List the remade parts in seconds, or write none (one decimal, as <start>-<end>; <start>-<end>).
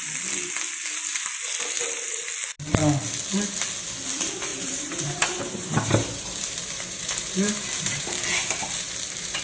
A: 4.5-9.4